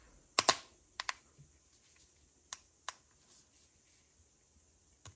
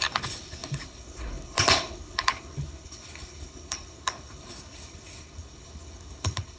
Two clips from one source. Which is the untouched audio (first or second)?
first